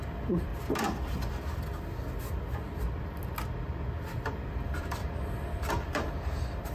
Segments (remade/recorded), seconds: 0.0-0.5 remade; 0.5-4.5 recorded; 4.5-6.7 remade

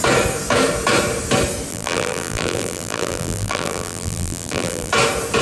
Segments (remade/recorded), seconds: 0.0-1.7 recorded; 1.7-4.9 remade; 4.9-5.4 recorded

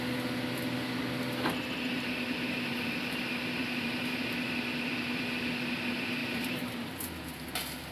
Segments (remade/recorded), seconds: 0.0-2.7 recorded; 2.7-4.2 remade; 4.2-6.2 recorded; 6.2-6.9 remade; 6.9-7.9 recorded

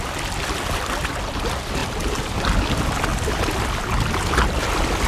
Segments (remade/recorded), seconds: 0.0-3.1 recorded; 3.1-5.1 remade

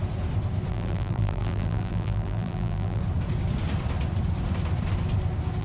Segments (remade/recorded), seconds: 0.0-0.7 recorded; 0.7-3.0 remade; 3.0-5.6 recorded

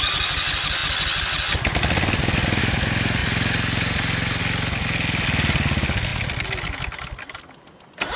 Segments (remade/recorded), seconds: 0.0-8.2 recorded